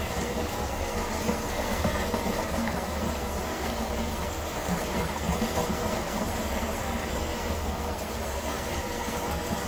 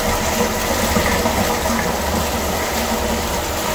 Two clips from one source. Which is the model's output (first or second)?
first